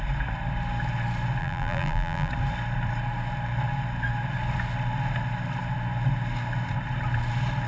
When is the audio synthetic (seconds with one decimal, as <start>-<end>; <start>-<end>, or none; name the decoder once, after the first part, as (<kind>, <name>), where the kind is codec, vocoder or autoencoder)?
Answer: 1.4-2.3 (vocoder, BigVGAN v2)